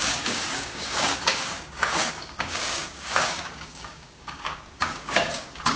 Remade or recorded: remade